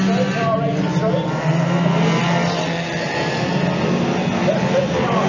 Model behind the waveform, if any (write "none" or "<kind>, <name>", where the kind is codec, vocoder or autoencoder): none